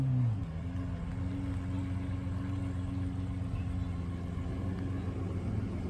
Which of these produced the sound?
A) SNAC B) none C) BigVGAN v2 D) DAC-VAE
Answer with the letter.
B